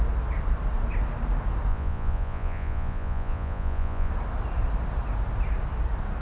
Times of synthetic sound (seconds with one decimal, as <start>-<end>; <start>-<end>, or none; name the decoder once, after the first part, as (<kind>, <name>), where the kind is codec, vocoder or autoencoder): 1.7-4.1 (vocoder, Vocos)